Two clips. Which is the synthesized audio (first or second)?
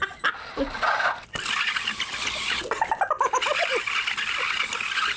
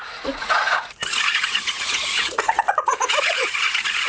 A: second